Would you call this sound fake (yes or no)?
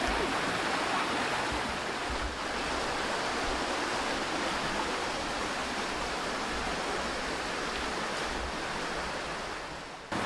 no